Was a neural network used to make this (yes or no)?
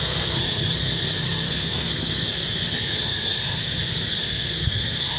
yes